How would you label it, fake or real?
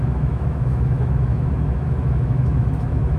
fake